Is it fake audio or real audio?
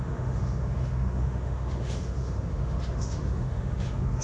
fake